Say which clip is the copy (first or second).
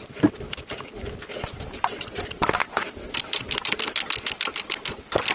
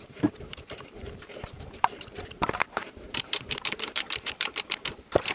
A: second